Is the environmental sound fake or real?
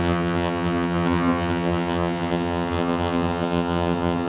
fake